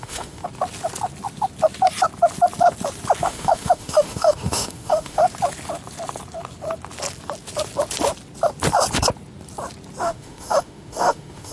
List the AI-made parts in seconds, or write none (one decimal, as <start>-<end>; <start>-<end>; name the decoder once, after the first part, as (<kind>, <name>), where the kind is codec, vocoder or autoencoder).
0.0-0.4 (autoencoder, DAC-VAE); 3.2-5.2; 10.0-11.5